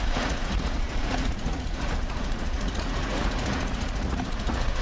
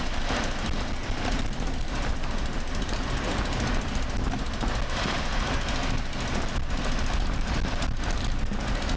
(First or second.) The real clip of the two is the second